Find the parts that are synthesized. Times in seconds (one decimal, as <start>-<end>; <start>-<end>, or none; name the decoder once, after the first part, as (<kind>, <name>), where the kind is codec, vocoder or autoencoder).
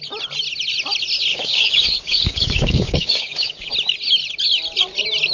1.3-3.7 (codec, DAC)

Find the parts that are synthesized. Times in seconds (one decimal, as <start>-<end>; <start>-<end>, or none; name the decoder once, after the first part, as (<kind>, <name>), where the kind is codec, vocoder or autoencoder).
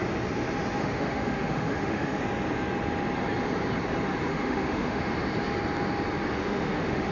0.8-2.2 (autoencoder, DAC-VAE); 4.3-5.0; 6.4-7.1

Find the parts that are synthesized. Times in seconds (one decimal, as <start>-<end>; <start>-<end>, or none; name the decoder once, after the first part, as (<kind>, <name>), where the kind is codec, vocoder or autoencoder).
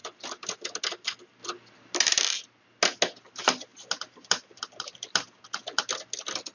3.7-5.8 (vocoder, BigVGAN v2)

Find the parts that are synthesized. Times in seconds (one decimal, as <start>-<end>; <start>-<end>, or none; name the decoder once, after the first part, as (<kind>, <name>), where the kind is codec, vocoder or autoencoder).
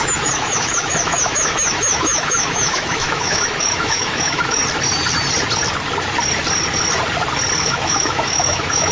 0.0-4.6 (autoencoder, DAC-VAE); 7.6-8.9